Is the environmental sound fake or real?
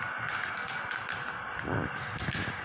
real